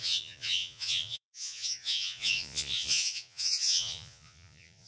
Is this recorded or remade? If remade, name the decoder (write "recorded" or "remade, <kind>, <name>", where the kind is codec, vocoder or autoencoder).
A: remade, vocoder, Vocos